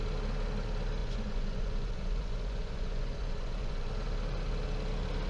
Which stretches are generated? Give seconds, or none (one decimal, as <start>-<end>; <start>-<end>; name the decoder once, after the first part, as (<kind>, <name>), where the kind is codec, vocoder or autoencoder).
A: 1.0-3.9 (vocoder, Vocos)